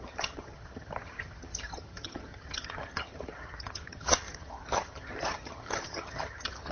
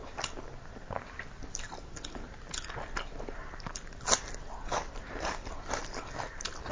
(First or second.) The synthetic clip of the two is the first